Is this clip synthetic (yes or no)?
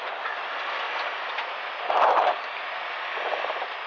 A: no